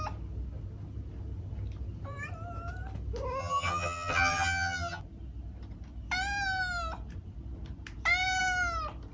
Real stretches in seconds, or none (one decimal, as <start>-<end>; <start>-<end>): 0.0-3.4; 5.0-9.1